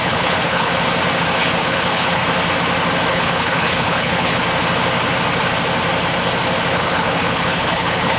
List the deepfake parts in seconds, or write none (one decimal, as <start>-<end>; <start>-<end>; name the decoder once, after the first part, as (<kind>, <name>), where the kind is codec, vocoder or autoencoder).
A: 0.0-0.7 (codec, HILCodec); 1.6-2.2; 3.1-4.4; 6.7-8.2